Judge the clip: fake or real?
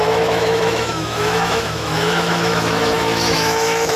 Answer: fake